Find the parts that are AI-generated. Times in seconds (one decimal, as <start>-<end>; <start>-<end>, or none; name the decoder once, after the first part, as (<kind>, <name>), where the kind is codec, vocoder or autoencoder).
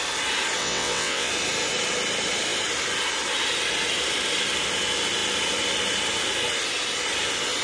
0.6-1.3 (vocoder, WaveNeXt)